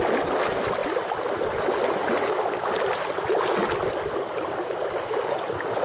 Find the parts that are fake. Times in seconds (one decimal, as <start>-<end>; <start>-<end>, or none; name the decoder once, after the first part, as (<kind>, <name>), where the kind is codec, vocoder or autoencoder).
none